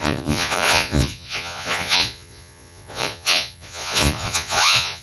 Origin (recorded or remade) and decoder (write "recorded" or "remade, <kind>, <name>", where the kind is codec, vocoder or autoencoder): remade, vocoder, Vocos